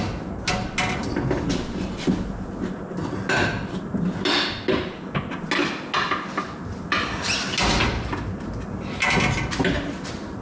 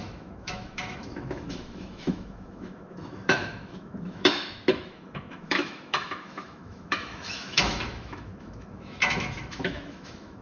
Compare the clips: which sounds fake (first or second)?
second